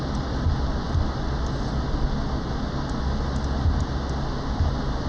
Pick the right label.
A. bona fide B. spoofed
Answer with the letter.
A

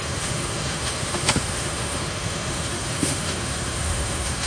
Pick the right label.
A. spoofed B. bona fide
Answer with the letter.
A